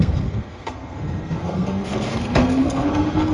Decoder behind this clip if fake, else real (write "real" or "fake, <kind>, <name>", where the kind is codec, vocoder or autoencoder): fake, codec, SNAC